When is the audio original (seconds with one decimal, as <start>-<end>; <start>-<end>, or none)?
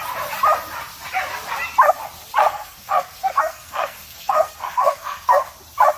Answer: 0.0-2.4; 5.5-6.0